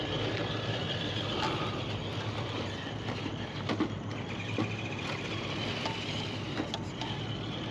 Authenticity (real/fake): real